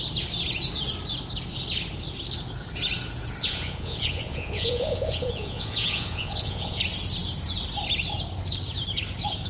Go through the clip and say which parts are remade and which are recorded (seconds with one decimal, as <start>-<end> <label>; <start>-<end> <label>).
0.0-3.4 recorded; 3.4-6.8 remade; 6.8-9.5 recorded